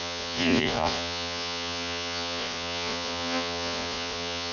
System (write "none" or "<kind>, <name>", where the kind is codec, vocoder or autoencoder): vocoder, Vocos